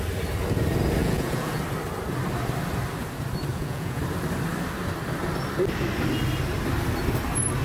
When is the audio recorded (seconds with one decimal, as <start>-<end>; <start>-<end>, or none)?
0.0-1.0; 1.6-3.5; 4.0-7.6